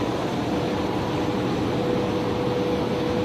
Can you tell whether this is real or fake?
real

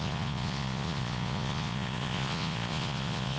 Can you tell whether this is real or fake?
fake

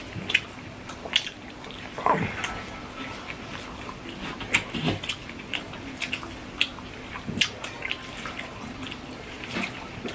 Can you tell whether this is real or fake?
real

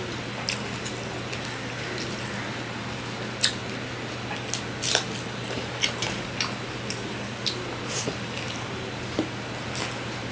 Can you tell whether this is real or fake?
real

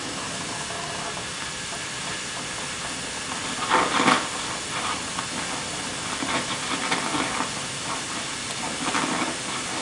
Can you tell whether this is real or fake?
real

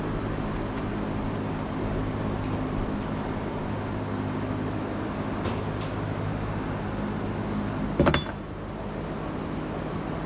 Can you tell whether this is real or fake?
real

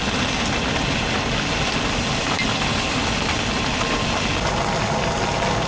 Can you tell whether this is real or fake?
real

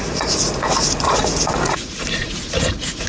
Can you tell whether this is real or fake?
fake